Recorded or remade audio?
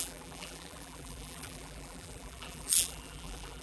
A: remade